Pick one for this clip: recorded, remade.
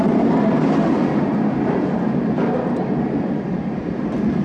recorded